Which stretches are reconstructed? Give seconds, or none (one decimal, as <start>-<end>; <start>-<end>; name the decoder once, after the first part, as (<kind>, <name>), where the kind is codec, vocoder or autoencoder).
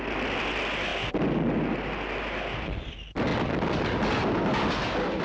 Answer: none